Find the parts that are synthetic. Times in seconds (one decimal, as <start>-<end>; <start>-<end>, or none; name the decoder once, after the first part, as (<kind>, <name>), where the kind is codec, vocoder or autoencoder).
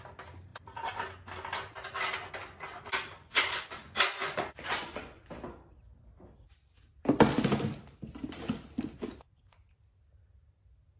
3.2-5.2 (vocoder, Vocos)